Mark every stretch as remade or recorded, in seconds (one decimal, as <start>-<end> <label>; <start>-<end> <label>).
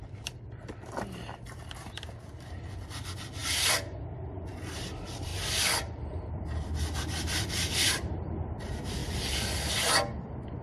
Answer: 0.0-9.0 remade; 9.0-10.6 recorded